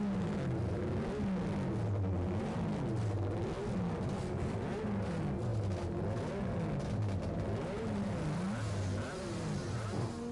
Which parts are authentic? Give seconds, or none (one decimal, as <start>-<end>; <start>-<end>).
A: 0.0-10.3